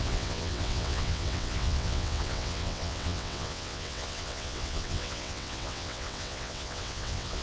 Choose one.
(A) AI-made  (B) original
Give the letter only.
A